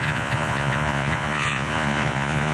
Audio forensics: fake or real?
fake